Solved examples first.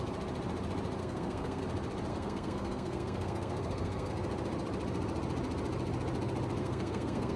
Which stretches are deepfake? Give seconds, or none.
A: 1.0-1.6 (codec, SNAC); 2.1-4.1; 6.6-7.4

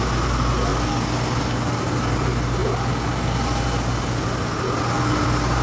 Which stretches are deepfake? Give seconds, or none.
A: none

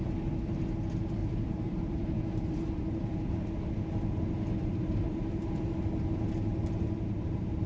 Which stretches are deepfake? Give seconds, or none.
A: 1.2-3.3 (vocoder, BigVGAN v2); 4.6-5.7; 6.5-7.7

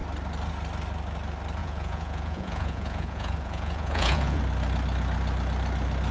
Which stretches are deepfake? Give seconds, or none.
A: 1.6-4.4 (vocoder, Vocos)